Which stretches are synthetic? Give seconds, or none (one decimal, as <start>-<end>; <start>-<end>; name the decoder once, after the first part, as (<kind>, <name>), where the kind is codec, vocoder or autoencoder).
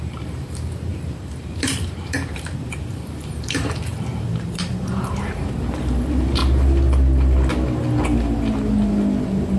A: 0.0-6.4 (vocoder, BigVGAN v2)